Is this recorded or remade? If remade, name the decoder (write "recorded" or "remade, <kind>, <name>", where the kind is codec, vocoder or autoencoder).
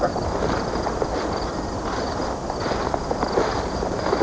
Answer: recorded